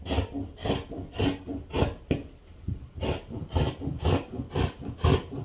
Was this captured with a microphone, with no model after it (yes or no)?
yes